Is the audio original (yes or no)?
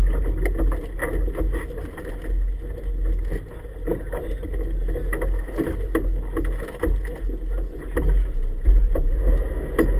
yes